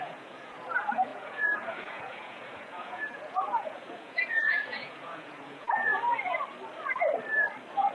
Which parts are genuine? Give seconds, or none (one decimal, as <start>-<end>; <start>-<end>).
5.9-7.9